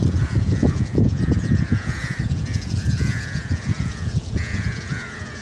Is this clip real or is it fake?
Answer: fake